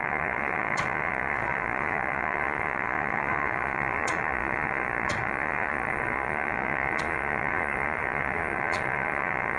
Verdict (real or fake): fake